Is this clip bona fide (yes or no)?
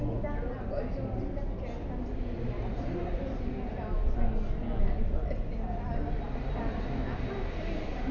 yes